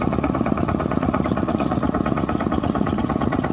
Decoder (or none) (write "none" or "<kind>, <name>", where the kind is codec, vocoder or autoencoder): vocoder, Vocos